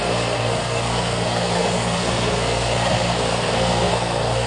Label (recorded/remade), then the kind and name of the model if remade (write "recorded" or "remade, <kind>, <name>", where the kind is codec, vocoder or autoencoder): remade, codec, SNAC